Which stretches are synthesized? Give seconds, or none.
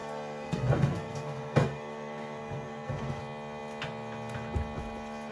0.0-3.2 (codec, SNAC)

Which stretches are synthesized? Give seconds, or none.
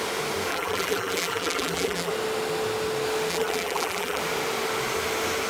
0.5-2.1 (vocoder, BigVGAN v2); 3.3-4.2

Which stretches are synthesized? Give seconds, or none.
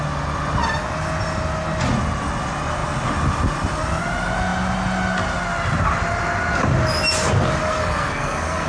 7.6-8.7 (codec, SNAC)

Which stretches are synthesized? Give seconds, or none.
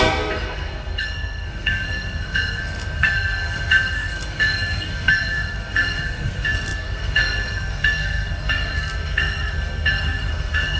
0.0-10.8 (codec, SNAC)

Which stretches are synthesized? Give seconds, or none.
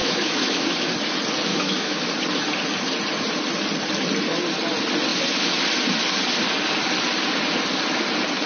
0.0-0.9 (autoencoder, DAC-VAE); 1.5-2.1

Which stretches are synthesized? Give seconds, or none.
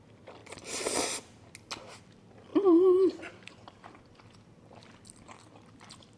0.4-0.9 (vocoder, BigVGAN v2); 2.5-4.0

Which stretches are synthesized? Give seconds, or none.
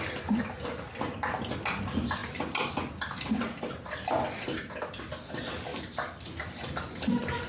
none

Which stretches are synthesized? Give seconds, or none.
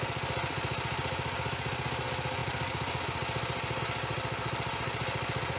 none